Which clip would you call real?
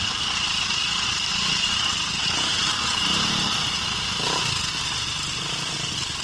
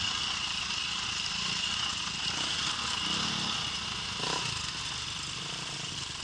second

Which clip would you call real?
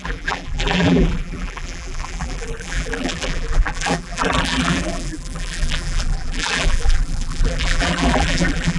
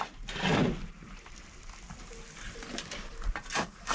second